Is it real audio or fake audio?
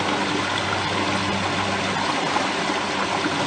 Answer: real